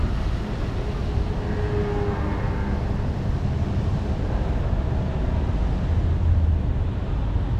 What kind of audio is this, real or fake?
real